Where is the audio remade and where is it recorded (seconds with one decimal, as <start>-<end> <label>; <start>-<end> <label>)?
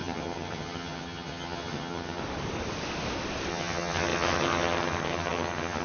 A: 0.0-2.2 remade; 2.2-3.5 recorded; 3.5-5.8 remade